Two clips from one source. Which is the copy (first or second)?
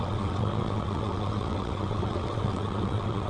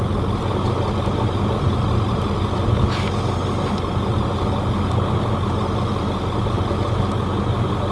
first